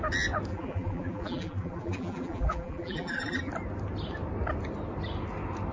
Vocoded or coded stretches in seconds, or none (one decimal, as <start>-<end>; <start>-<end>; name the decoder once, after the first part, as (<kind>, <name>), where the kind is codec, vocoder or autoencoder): 0.5-3.5 (vocoder, BigVGAN v2)